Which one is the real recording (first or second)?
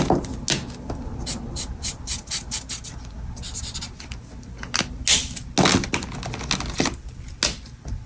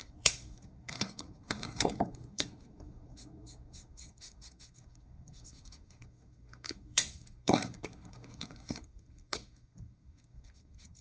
first